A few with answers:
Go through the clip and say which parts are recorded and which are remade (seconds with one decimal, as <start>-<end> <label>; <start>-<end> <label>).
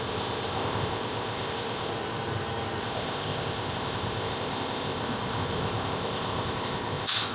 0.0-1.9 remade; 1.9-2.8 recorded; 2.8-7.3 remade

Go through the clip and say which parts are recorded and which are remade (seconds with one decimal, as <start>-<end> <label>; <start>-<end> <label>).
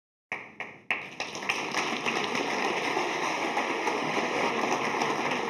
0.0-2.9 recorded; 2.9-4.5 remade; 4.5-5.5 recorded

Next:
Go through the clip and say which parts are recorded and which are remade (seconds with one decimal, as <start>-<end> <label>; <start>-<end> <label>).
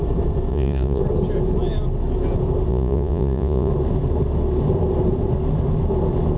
0.0-0.5 recorded; 0.5-1.0 remade; 1.0-2.7 recorded; 2.7-3.7 remade; 3.7-6.4 recorded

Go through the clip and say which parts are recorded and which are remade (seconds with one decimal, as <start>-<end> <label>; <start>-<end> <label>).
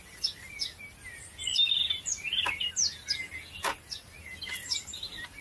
0.0-5.4 recorded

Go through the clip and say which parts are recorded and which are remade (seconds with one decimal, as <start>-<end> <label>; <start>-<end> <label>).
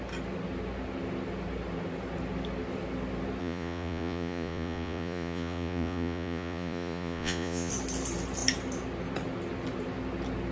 0.0-3.4 recorded; 3.4-7.7 remade; 7.7-10.5 recorded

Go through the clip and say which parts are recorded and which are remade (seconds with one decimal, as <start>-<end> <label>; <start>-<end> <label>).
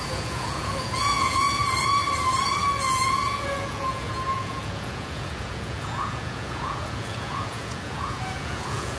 0.0-1.6 remade; 1.6-2.6 recorded; 2.6-9.0 remade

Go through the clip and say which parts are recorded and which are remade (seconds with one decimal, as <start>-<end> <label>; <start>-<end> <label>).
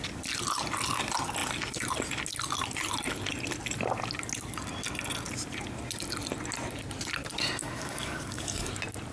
0.0-7.6 recorded; 7.6-8.7 remade; 8.7-9.1 recorded